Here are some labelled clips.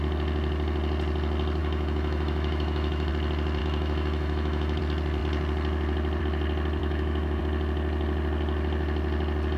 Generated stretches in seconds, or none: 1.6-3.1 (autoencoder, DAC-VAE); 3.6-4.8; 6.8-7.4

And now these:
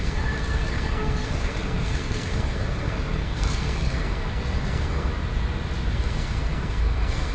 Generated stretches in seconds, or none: 0.0-5.1 (codec, SNAC); 5.9-7.3

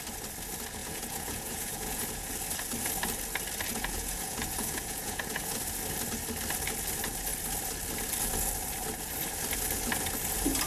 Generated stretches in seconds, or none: 0.8-2.3 (vocoder, Vocos); 3.7-5.6

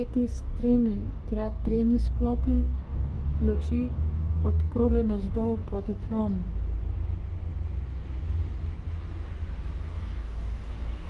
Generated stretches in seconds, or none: 0.0-6.2 (codec, DAC); 9.8-11.1

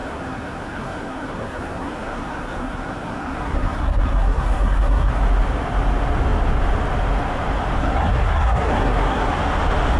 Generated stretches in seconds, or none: 0.0-5.1 (codec, SNAC); 7.8-9.3

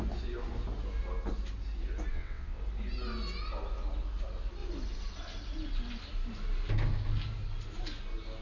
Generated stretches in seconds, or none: 2.1-2.6 (vocoder, WaveNeXt)

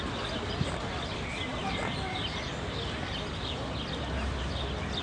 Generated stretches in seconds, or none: none

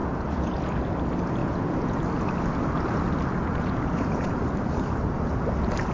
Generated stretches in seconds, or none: 0.0-0.8 (vocoder, Vocos); 1.4-2.0; 3.5-4.4